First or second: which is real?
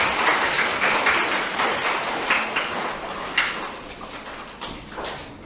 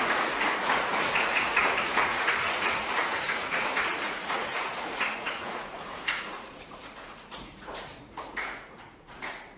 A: first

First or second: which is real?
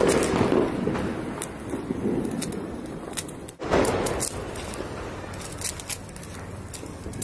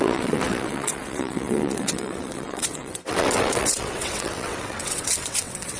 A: first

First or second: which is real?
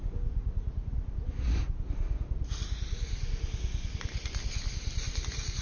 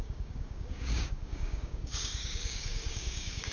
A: first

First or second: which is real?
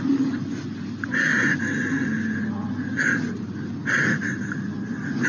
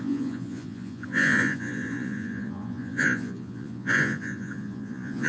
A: first